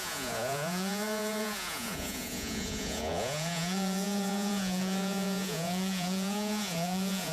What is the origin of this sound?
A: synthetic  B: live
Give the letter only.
A